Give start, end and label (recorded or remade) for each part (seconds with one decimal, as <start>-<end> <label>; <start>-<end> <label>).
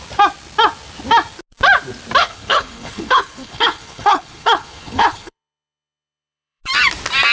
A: 0.0-2.2 recorded; 2.2-6.6 remade; 6.6-7.3 recorded